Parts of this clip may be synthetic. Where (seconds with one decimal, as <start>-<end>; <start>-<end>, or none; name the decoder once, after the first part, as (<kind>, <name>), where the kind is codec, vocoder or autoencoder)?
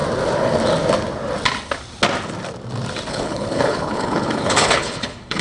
3.1-5.4 (codec, HILCodec)